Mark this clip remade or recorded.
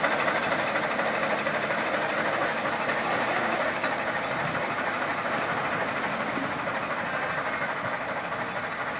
recorded